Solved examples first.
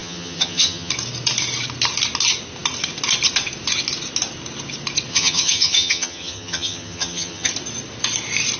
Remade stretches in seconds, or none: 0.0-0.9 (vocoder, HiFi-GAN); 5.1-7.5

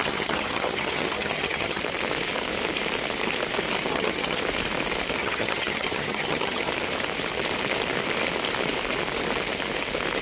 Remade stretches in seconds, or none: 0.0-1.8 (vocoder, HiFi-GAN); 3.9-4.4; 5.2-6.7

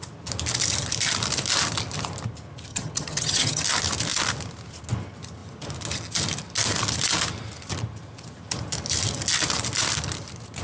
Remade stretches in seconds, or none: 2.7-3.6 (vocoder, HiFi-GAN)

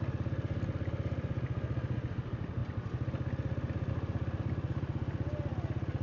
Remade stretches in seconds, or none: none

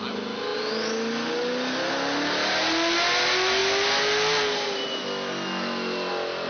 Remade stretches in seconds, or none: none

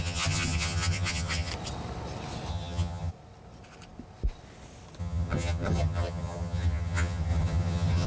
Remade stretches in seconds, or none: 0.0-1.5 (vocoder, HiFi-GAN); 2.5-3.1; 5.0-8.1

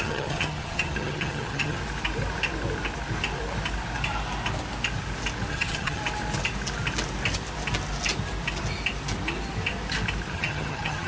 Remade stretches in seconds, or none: 0.0-1.8 (vocoder, HiFi-GAN); 5.5-6.0; 10.3-11.1

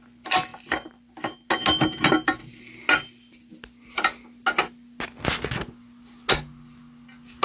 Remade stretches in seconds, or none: none